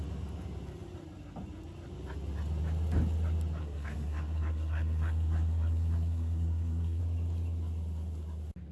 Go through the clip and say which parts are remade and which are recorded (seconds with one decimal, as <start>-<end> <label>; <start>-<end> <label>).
0.0-3.6 recorded; 3.6-7.0 remade; 7.0-8.7 recorded